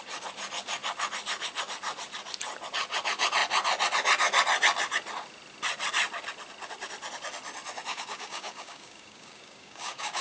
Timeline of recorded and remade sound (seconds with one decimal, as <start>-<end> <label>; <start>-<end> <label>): 0.0-7.9 recorded; 7.9-10.2 remade